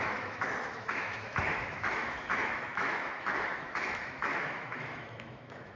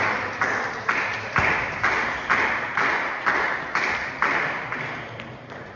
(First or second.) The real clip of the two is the second